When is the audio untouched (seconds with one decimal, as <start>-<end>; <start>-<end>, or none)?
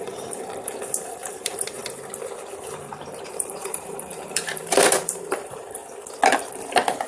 1.8-2.4; 5.8-7.1